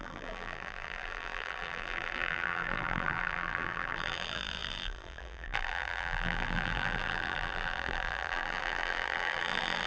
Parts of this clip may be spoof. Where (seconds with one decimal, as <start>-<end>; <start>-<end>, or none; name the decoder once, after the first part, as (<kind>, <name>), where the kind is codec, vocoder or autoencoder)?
0.0-9.9 (vocoder, BigVGAN v2)